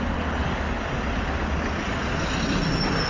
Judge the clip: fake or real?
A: real